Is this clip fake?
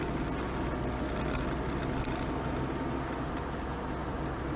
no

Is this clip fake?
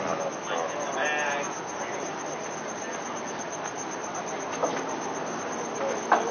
no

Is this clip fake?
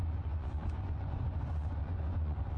yes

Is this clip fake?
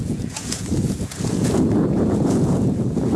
yes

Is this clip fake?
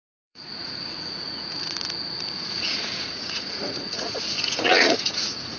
yes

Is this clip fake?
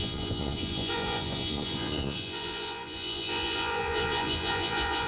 yes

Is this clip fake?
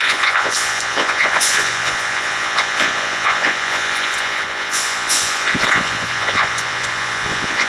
yes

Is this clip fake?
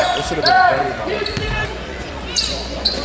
yes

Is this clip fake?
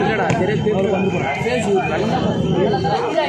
no